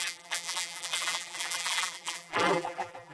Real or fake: fake